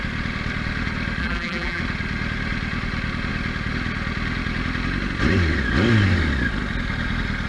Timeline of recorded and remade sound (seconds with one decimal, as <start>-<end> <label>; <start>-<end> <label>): 0.0-1.2 recorded; 1.2-1.8 remade; 1.8-7.5 recorded